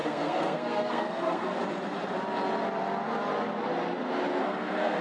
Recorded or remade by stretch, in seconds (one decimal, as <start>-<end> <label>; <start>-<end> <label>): 0.0-1.4 remade; 1.4-4.4 recorded; 4.4-5.0 remade